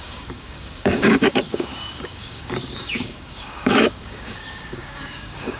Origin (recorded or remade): remade